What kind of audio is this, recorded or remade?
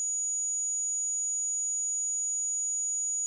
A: recorded